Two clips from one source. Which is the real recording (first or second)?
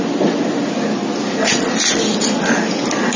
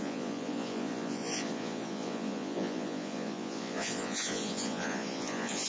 first